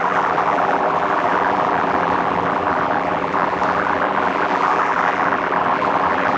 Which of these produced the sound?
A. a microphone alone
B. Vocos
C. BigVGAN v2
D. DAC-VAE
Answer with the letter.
C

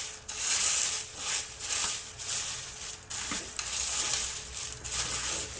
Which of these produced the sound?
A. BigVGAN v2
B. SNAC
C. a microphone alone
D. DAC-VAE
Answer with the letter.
C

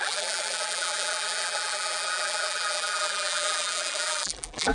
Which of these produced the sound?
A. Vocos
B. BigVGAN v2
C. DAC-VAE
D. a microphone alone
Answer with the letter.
B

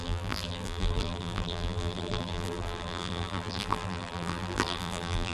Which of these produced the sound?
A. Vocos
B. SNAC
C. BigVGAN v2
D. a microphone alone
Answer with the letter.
C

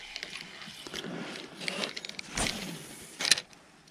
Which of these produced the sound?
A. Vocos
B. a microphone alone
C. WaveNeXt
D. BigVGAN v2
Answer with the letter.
B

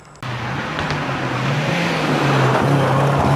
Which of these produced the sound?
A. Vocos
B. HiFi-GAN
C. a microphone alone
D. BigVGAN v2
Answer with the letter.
C